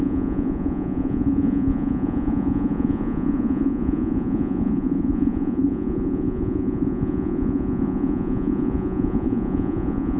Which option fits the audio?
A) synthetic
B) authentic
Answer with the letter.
A